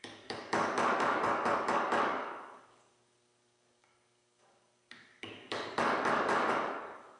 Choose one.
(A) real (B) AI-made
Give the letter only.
B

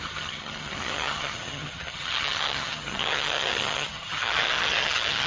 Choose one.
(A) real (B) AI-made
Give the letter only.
B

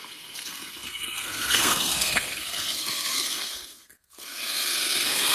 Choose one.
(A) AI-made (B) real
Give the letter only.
A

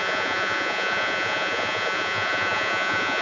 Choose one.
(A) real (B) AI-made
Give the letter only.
B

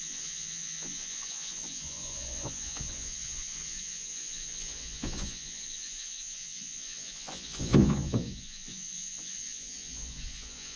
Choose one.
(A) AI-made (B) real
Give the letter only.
A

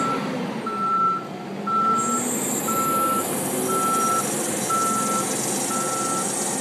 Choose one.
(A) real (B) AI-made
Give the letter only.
A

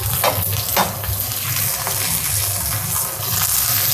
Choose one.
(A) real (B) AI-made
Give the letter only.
A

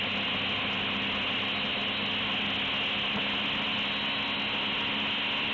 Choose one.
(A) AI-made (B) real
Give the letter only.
B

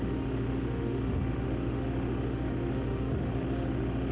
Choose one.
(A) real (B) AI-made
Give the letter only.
B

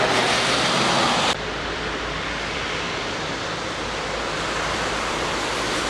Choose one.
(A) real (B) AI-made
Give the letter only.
B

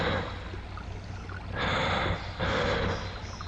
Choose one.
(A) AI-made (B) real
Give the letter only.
B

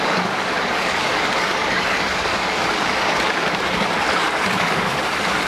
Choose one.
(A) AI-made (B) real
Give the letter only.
A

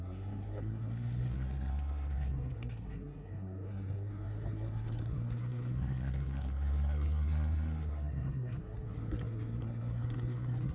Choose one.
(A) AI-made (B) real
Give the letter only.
A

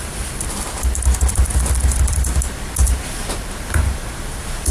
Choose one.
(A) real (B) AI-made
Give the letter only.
B